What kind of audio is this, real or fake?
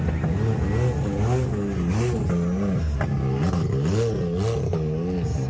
real